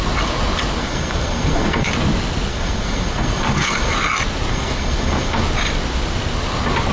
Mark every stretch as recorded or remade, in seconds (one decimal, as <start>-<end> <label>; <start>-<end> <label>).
0.0-0.8 recorded; 0.8-1.9 remade; 1.9-2.5 recorded; 2.5-3.9 remade; 3.9-4.5 recorded; 4.5-5.4 remade; 5.4-6.9 recorded

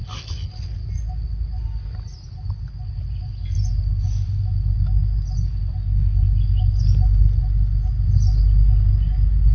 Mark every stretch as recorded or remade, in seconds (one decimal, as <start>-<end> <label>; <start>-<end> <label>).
0.0-9.5 recorded

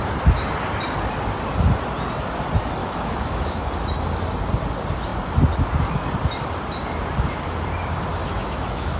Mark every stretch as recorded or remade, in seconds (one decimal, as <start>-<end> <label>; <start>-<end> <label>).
0.0-2.8 recorded; 2.8-3.7 remade; 3.7-8.2 recorded; 8.2-9.0 remade